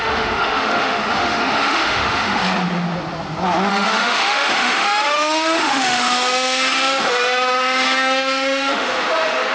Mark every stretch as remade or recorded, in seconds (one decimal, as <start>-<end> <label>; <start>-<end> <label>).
0.0-2.4 remade; 2.4-3.7 recorded; 3.7-9.5 remade